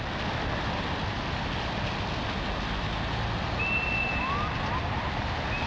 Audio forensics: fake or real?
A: real